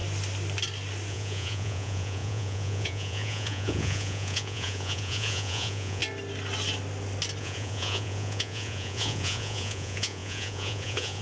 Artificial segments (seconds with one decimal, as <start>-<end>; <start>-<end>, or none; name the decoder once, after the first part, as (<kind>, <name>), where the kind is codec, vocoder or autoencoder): 1.1-6.0 (vocoder, Vocos); 7.4-11.2